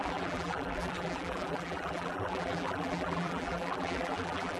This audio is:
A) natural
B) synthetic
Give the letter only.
B